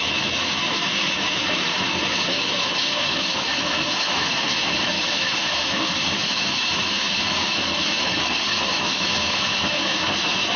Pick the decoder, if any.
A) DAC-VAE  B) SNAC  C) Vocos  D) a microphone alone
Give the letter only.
A